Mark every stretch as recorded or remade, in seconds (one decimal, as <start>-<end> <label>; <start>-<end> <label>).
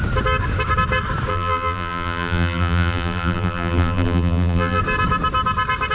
0.0-1.3 recorded; 1.3-4.8 remade; 4.8-5.9 recorded